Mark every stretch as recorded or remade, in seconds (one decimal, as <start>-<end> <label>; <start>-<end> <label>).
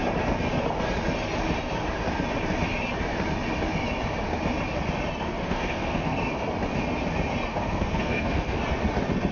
0.0-5.4 recorded; 5.4-6.3 remade; 6.3-7.5 recorded; 7.5-8.6 remade; 8.6-9.3 recorded